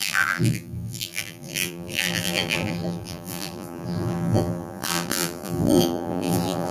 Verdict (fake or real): fake